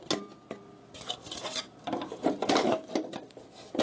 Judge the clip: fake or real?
real